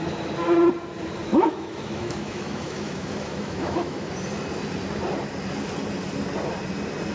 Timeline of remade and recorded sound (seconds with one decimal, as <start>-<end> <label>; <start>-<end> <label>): 0.0-1.3 recorded; 1.3-4.1 remade; 4.1-7.1 recorded